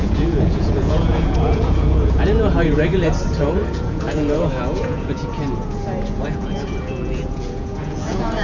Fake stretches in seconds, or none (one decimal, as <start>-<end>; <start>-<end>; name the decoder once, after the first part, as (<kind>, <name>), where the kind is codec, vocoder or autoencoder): 0.0-2.9 (vocoder, Vocos); 3.7-8.4